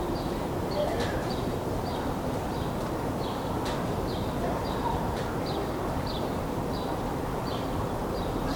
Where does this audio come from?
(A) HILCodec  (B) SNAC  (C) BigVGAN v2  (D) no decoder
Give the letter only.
C